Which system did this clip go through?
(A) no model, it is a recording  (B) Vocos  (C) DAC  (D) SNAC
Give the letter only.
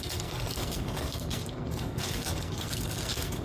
D